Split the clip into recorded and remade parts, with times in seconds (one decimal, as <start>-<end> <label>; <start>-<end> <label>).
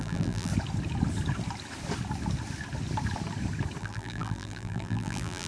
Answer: 0.0-0.5 remade; 0.5-3.8 recorded; 3.8-5.5 remade